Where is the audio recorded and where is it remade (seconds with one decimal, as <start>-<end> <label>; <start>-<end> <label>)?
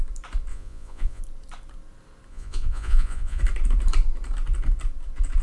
0.0-0.5 recorded; 0.5-1.2 remade; 1.2-2.3 recorded; 2.3-3.4 remade; 3.4-5.4 recorded